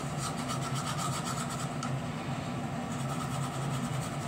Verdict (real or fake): real